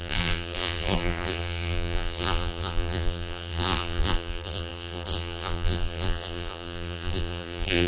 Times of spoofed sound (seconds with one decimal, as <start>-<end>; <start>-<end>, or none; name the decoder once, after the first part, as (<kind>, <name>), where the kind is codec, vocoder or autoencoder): 0.0-7.9 (vocoder, BigVGAN v2)